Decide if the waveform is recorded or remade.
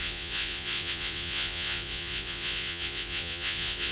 remade